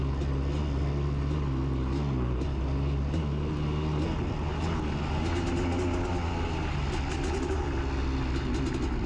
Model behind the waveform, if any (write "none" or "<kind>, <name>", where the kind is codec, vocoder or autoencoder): none